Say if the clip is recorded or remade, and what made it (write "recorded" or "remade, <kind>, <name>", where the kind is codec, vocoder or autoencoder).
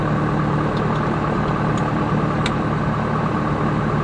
recorded